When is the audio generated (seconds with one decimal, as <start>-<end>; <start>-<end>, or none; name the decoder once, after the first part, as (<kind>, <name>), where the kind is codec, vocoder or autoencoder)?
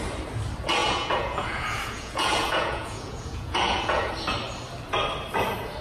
0.8-4.1 (vocoder, Vocos)